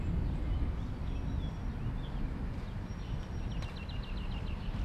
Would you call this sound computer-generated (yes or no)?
no